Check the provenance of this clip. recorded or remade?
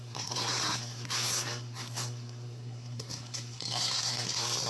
remade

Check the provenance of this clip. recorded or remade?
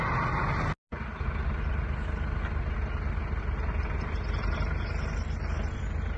recorded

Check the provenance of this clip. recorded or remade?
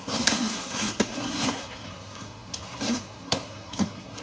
remade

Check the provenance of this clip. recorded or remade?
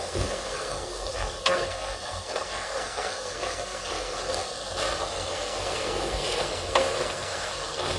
remade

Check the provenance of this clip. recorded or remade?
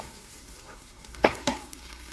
remade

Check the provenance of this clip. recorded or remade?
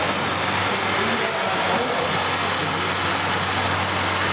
recorded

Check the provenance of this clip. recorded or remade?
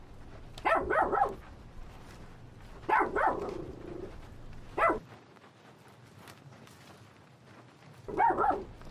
recorded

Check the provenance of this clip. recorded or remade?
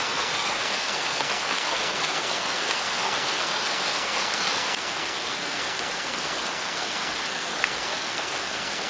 remade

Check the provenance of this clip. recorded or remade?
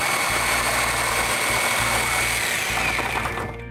recorded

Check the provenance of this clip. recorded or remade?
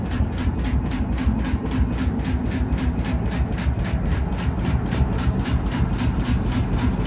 recorded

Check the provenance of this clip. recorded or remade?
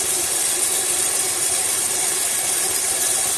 recorded